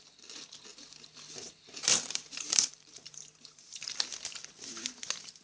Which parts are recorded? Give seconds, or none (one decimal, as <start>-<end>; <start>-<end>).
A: 0.0-0.7; 3.9-5.4